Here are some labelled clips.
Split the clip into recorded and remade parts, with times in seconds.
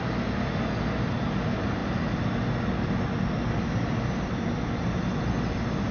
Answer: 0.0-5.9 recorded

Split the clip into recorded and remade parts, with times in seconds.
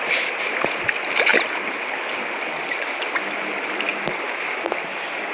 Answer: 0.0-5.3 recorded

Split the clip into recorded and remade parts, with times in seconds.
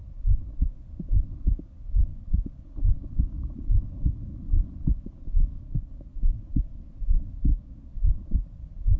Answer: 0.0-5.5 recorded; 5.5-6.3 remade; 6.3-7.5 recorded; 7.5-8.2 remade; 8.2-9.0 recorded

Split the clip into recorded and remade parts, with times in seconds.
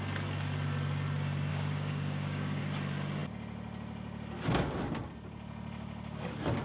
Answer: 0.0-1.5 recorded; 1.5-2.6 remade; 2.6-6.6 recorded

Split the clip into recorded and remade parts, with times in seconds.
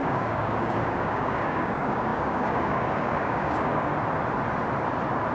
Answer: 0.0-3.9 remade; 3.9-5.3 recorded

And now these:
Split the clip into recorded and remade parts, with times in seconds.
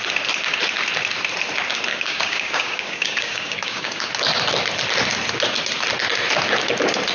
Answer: 0.0-1.9 recorded; 1.9-4.1 remade; 4.1-7.1 recorded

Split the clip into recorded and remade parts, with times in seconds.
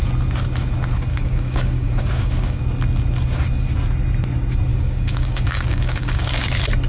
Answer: 0.0-1.1 recorded; 1.1-2.6 remade; 2.6-4.7 recorded; 4.7-6.5 remade; 6.5-6.9 recorded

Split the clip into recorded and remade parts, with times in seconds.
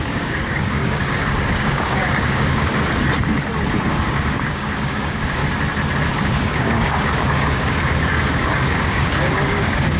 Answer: 0.0-2.7 remade; 2.7-3.8 recorded; 3.8-5.4 remade; 5.4-6.2 recorded; 6.2-10.0 remade